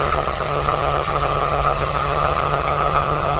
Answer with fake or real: fake